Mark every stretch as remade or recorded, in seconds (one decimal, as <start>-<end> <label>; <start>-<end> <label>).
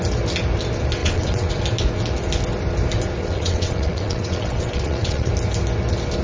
0.0-1.0 recorded; 1.0-1.5 remade; 1.5-3.3 recorded; 3.3-5.3 remade; 5.3-6.2 recorded